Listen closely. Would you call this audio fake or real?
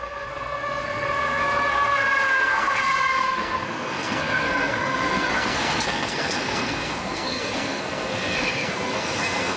fake